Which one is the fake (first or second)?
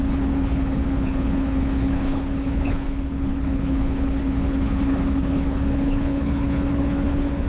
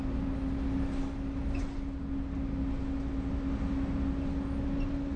first